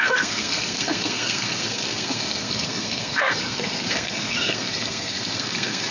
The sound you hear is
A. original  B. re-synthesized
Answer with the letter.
B